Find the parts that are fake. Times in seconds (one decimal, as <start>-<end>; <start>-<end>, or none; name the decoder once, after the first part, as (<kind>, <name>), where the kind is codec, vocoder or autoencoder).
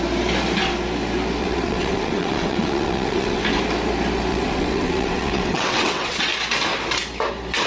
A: 1.4-3.4 (vocoder, WaveNeXt); 4.3-6.3